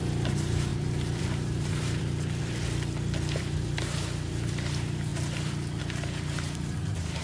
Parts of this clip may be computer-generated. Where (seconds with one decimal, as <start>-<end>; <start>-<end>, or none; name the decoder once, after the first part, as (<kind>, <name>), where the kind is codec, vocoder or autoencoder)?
0.0-2.0 (vocoder, BigVGAN v2); 3.4-5.1; 5.8-7.2